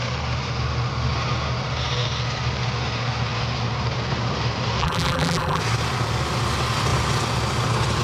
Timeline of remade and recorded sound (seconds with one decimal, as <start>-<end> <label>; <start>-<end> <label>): 0.0-4.8 recorded; 4.8-5.6 remade; 5.6-8.0 recorded